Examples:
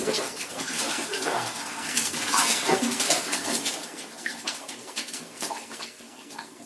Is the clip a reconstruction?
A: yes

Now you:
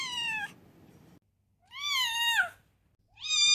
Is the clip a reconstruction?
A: no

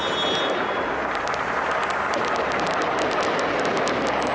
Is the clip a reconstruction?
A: no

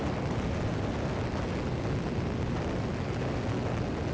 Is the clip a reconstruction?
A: no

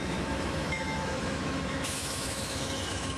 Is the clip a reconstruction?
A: yes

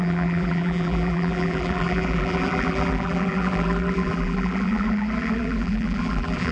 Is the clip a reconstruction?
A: yes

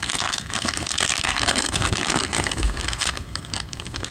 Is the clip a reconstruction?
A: yes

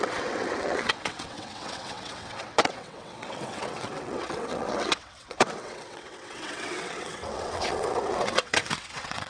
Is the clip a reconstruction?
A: yes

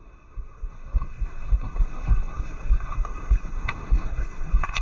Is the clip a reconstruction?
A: yes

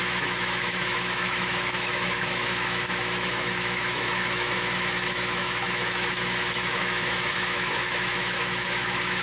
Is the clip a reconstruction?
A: yes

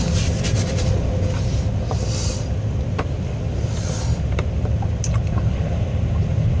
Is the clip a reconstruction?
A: no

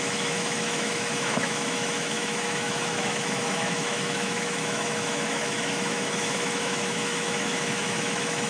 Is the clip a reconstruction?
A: yes